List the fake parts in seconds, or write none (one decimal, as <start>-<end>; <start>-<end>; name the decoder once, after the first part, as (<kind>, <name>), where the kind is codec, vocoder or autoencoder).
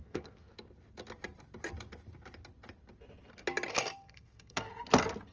0.0-0.5 (codec, SNAC); 3.7-4.7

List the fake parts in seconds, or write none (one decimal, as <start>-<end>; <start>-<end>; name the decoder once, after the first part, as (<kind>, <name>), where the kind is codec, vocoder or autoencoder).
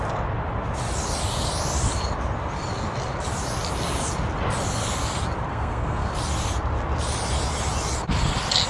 5.5-6.1 (codec, SNAC)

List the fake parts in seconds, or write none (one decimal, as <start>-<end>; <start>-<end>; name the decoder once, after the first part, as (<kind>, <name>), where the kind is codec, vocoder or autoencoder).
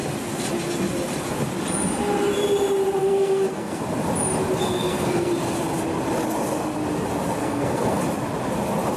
3.0-3.8 (codec, SNAC); 4.6-5.3; 7.4-8.0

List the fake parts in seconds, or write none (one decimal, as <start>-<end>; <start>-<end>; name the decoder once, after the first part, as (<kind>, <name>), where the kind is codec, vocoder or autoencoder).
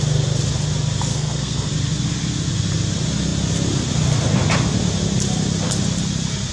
1.1-1.7 (codec, SNAC)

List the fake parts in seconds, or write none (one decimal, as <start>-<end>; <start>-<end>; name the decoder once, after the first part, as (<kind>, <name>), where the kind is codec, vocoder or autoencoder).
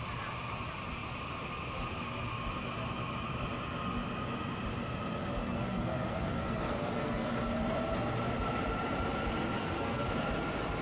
5.4-7.3 (codec, SNAC); 9.6-10.1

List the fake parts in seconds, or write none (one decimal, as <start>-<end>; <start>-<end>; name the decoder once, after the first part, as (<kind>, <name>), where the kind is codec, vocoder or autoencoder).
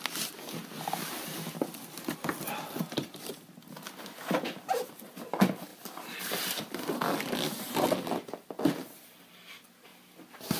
none